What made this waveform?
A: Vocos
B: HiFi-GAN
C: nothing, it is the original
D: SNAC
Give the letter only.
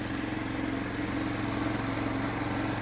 C